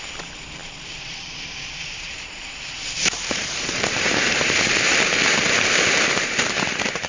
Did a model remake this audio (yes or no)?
yes